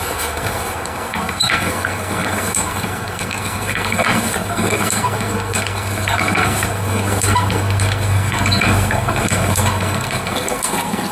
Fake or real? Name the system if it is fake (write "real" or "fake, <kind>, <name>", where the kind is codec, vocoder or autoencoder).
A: fake, codec, SNAC